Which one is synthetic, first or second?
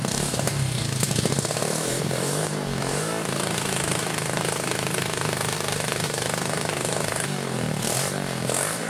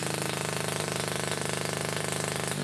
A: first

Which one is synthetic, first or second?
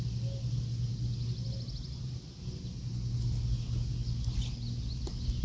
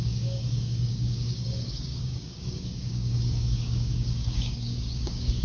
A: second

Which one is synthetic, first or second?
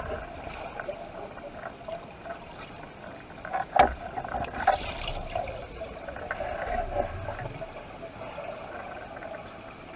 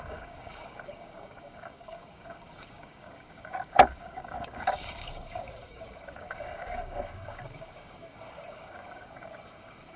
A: second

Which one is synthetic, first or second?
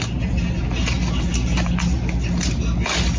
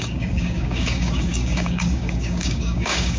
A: second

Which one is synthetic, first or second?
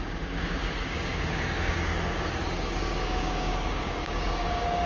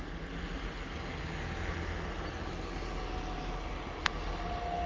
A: first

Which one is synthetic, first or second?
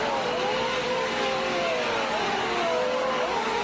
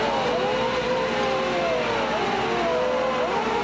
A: first